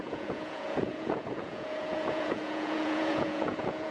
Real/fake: fake